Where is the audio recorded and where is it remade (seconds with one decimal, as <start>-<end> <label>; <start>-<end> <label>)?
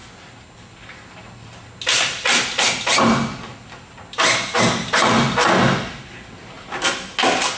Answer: 0.0-7.6 recorded